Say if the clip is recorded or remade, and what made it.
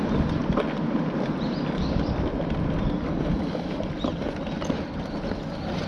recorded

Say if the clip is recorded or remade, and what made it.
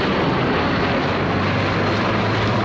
recorded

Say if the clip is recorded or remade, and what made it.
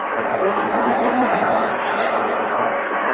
remade, codec, SNAC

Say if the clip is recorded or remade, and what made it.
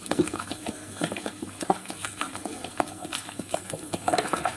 remade, codec, SNAC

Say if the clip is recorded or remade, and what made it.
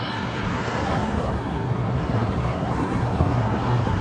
remade, codec, SNAC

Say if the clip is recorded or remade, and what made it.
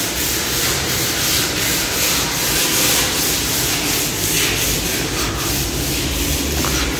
recorded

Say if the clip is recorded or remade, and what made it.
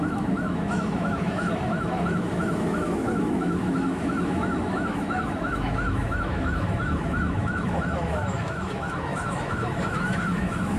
remade, autoencoder, DAC-VAE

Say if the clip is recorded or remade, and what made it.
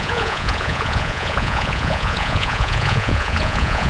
remade, vocoder, Vocos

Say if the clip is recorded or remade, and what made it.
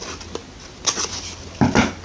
recorded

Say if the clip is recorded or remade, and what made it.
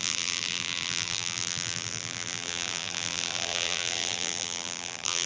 remade, vocoder, BigVGAN v2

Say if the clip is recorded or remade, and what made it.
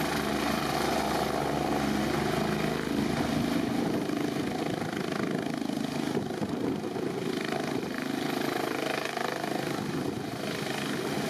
recorded